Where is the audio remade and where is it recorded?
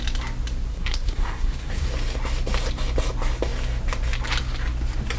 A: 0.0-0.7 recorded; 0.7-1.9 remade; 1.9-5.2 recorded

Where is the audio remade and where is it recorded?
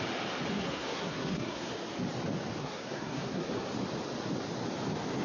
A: 0.0-0.5 recorded; 0.5-1.7 remade; 1.7-2.6 recorded; 2.6-3.7 remade; 3.7-5.2 recorded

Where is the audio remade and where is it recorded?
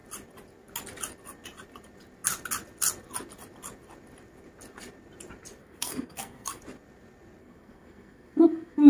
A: 0.0-5.6 recorded; 5.6-6.6 remade; 6.6-7.4 recorded; 7.4-8.9 remade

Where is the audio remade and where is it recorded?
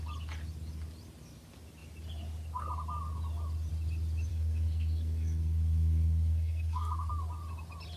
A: 0.0-4.3 recorded; 4.3-7.1 remade; 7.1-8.0 recorded